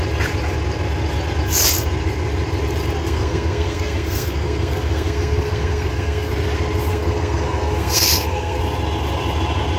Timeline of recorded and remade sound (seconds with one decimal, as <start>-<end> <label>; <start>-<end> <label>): 0.0-3.0 recorded; 3.0-6.3 remade; 6.3-6.9 recorded; 6.9-8.6 remade; 8.6-9.8 recorded